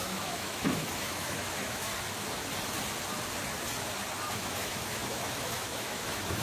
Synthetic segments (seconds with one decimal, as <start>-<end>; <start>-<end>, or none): 0.0-1.9; 4.2-6.4

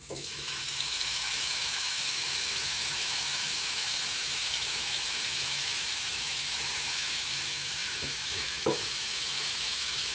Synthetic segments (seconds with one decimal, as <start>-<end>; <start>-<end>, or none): 0.0-10.1

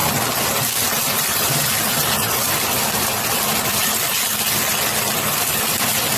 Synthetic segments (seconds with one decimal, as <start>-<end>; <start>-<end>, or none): none

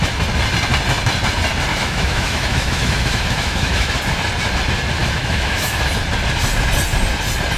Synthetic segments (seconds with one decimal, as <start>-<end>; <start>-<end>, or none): 1.7-3.9; 5.0-5.9

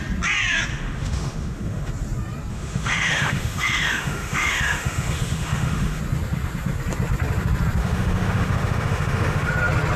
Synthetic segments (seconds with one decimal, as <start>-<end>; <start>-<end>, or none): 0.7-1.9; 2.5-6.0; 7.8-9.5

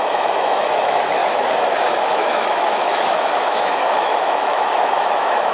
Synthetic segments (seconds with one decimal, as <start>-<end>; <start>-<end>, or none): 0.0-1.2; 2.1-5.5

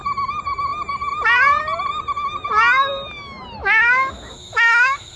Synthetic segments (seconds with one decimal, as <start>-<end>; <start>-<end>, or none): 3.6-5.2

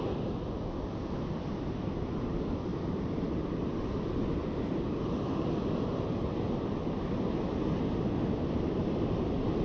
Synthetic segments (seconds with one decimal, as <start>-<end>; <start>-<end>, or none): none